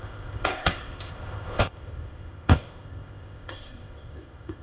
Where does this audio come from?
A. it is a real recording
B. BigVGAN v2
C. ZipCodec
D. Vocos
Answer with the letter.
C